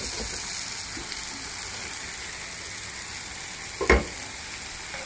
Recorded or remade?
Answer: recorded